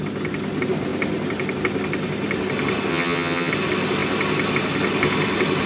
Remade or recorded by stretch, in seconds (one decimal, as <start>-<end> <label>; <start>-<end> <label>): 0.0-2.9 recorded; 2.9-3.5 remade; 3.5-5.7 recorded